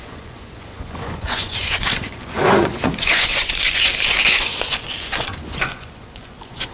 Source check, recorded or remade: remade